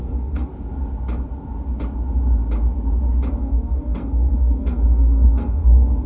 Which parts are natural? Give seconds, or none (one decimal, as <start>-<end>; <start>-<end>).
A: 0.5-3.4